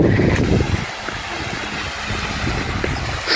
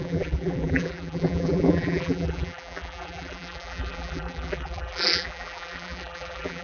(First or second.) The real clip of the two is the first